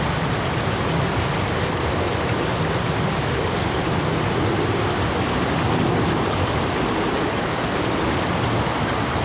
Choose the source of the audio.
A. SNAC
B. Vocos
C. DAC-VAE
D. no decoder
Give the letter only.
D